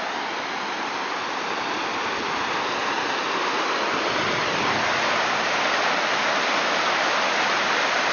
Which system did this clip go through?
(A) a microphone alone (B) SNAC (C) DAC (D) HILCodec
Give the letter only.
A